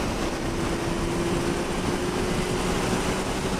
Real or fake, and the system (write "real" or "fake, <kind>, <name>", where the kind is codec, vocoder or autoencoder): real